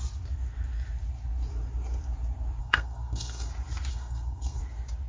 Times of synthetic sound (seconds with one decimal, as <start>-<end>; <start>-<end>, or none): 2.6-3.5; 3.9-4.6